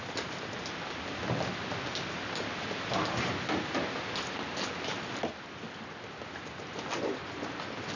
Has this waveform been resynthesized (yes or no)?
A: no